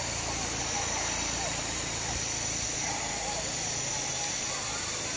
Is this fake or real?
real